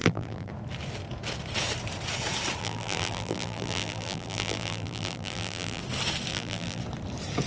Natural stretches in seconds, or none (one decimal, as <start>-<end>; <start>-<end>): 0.5-2.6; 5.8-6.3; 6.8-7.5